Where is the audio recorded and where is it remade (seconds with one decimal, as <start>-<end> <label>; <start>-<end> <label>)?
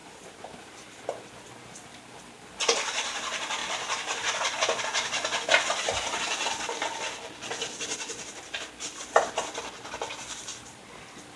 0.0-1.0 remade; 1.0-3.6 recorded; 3.6-4.8 remade; 4.8-10.5 recorded; 10.5-11.0 remade; 11.0-11.4 recorded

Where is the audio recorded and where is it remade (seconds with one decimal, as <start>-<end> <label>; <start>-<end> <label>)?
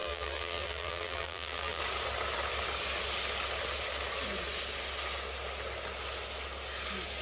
0.0-1.8 remade; 1.8-7.2 recorded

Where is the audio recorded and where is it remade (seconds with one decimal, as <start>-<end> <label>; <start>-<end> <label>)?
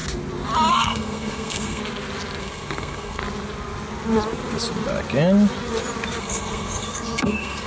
0.0-0.7 recorded; 0.7-1.8 remade; 1.8-2.4 recorded; 2.4-3.2 remade; 3.2-6.2 recorded; 6.2-7.7 remade